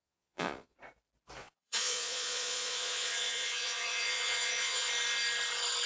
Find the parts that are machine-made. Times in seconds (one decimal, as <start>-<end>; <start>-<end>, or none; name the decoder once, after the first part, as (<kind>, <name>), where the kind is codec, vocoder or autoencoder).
0.0-0.8 (vocoder, Vocos); 1.4-4.9